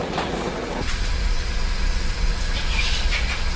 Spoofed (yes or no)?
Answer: yes